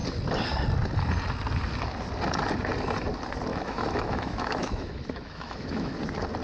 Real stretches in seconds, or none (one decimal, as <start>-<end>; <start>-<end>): 0.0-3.5; 6.0-6.4

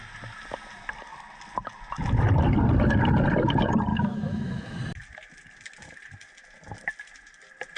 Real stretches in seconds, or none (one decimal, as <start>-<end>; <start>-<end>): 0.0-3.9; 4.8-7.8